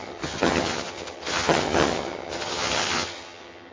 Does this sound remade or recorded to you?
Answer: remade